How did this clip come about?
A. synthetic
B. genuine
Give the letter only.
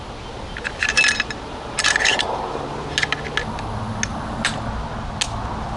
B